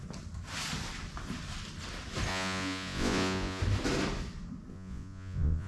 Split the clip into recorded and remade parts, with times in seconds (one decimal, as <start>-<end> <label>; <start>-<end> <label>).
0.0-2.3 recorded; 2.3-3.6 remade; 3.6-4.7 recorded; 4.7-5.7 remade